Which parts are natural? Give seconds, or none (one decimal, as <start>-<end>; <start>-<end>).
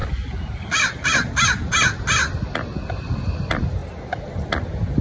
0.0-5.0